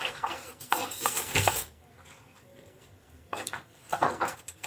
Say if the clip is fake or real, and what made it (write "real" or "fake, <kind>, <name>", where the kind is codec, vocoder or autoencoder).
fake, codec, SNAC